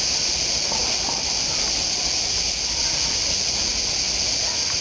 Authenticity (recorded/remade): recorded